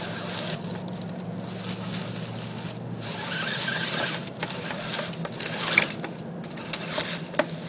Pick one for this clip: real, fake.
real